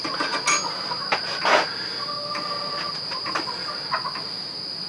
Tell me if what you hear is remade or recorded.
recorded